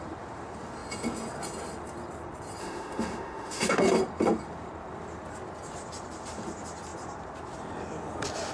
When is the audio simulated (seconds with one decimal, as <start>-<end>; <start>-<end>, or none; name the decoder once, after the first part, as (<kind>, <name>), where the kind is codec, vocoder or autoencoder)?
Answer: 2.6-3.8 (autoencoder, DAC-VAE)